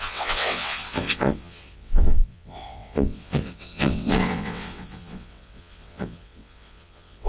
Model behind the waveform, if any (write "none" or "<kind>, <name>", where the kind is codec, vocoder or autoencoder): vocoder, WaveNeXt